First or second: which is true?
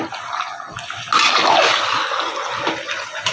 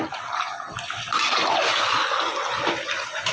first